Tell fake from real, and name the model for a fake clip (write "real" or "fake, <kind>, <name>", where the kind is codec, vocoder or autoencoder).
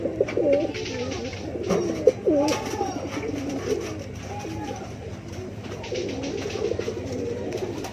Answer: real